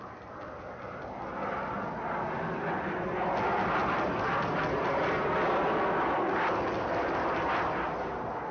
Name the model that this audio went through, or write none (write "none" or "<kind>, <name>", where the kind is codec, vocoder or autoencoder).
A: none